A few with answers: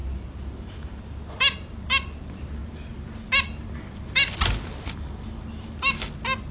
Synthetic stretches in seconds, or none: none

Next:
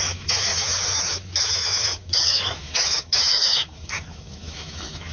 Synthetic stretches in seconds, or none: 0.0-5.1 (autoencoder, DAC-VAE)

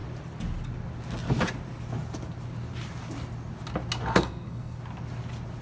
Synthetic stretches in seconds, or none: 4.1-4.8 (codec, SNAC)

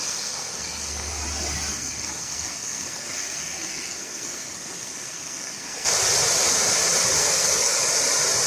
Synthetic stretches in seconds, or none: 0.0-1.1 (codec, SNAC); 1.7-5.9; 7.2-7.8

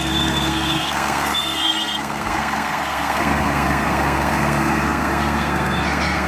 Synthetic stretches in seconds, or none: 0.0-6.3 (codec, SNAC)

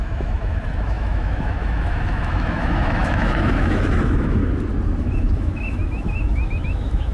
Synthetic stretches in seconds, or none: 0.0-4.4 (autoencoder, DAC-VAE); 5.0-7.1